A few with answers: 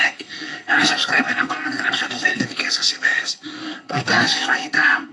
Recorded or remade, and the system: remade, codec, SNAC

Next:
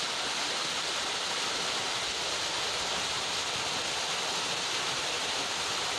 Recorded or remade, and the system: recorded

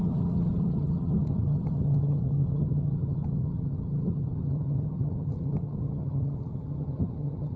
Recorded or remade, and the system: remade, vocoder, HiFi-GAN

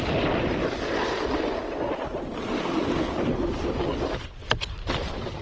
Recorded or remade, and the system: recorded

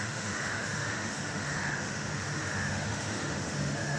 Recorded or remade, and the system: remade, autoencoder, DAC-VAE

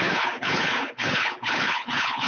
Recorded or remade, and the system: remade, codec, HILCodec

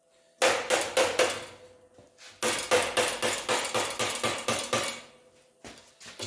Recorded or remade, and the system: recorded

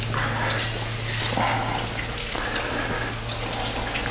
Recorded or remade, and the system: recorded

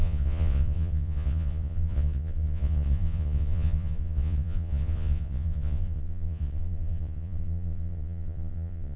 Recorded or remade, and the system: remade, vocoder, Vocos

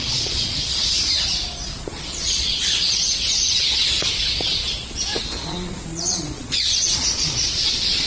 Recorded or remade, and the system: remade, vocoder, Vocos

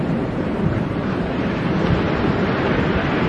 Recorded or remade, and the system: remade, vocoder, BigVGAN v2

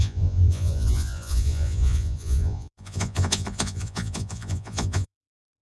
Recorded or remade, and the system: remade, vocoder, Vocos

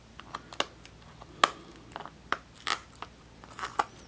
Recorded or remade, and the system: recorded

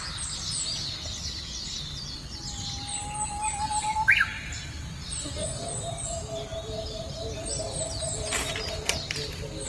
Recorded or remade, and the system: recorded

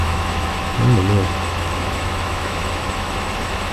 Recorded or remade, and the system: remade, autoencoder, DAC-VAE